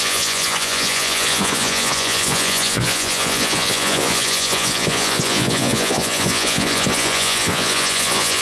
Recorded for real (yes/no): no